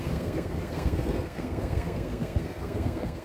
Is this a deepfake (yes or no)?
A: yes